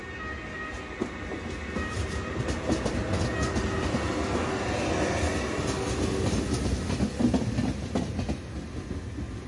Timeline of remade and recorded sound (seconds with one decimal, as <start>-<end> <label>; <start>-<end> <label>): 0.0-9.5 recorded